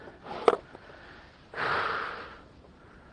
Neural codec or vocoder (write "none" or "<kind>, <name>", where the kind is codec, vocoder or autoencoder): none